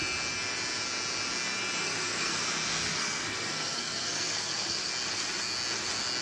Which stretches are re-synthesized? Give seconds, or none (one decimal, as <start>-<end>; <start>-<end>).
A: 1.8-2.4; 2.9-4.9